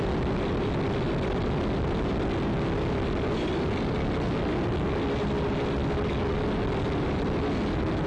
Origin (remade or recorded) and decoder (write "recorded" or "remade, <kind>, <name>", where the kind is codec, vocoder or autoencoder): recorded